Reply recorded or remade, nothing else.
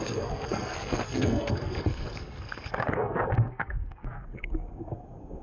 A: remade